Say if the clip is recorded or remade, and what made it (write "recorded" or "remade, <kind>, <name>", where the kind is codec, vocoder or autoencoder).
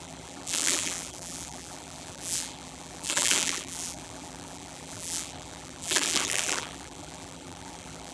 remade, vocoder, BigVGAN v2